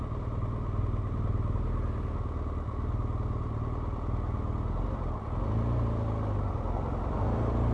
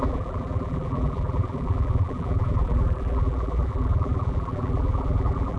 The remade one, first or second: second